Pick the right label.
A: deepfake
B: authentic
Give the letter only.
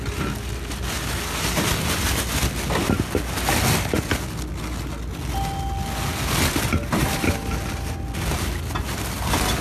B